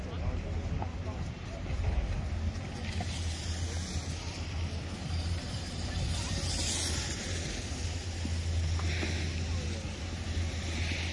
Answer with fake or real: real